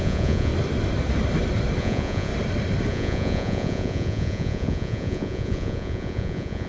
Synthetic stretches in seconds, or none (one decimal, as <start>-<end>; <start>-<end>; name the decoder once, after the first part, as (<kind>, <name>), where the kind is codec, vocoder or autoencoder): 0.0-0.5 (vocoder, Vocos); 1.8-2.3; 2.9-6.7